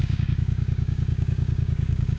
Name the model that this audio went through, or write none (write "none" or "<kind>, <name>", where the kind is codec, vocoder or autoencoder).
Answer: codec, DAC